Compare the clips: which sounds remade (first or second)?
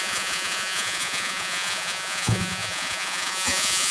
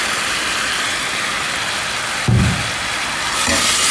first